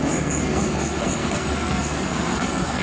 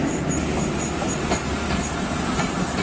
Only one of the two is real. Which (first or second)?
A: second